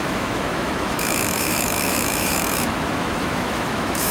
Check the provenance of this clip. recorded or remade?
remade